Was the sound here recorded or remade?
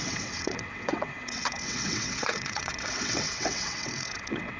remade